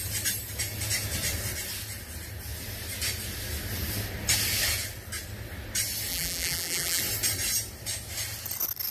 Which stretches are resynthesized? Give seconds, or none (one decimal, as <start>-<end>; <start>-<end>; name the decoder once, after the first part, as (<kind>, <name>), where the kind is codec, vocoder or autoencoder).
6.1-7.0 (vocoder, BigVGAN v2)